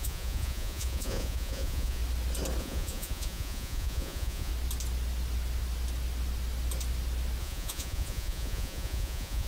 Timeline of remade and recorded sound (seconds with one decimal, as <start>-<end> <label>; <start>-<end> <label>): 0.0-2.0 remade; 2.0-2.6 recorded; 2.6-4.5 remade; 4.5-7.4 recorded; 7.4-9.5 remade